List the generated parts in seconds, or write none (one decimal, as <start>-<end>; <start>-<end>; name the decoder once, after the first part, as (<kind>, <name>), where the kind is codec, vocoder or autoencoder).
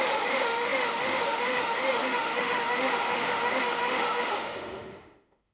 0.0-5.5 (autoencoder, DAC-VAE)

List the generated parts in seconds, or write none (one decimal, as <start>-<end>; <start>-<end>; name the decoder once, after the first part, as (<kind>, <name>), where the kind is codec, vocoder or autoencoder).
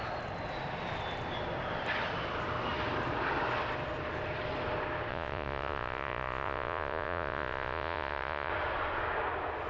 5.1-8.5 (vocoder, Vocos)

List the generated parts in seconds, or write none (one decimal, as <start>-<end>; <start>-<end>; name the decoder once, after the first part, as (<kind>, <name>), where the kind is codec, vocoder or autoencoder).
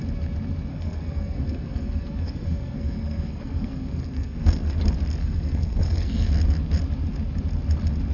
0.7-4.8 (codec, SNAC); 5.2-6.3